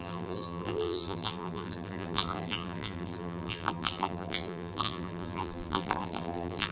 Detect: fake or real fake